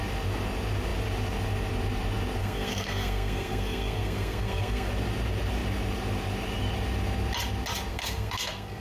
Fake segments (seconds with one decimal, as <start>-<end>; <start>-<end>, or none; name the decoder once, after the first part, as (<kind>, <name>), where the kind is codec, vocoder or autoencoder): 2.4-4.9 (codec, SNAC); 7.9-8.8